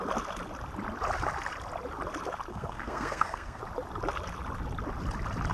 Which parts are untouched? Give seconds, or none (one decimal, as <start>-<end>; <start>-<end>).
0.0-2.5; 3.6-5.5

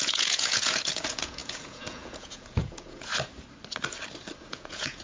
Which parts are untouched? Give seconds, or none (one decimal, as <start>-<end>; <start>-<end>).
3.1-4.4

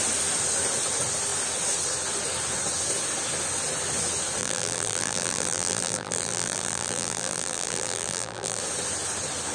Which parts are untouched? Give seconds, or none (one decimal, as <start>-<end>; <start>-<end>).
0.0-4.4; 8.6-9.5